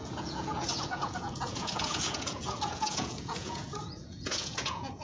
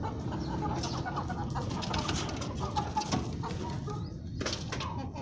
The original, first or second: second